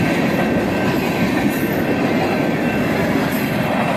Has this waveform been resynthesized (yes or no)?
no